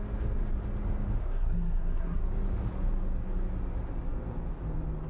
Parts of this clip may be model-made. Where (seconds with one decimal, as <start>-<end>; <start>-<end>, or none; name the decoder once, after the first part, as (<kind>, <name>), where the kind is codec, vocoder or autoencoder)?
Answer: 1.2-2.2 (codec, SNAC)